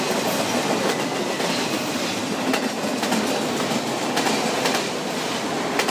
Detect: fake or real real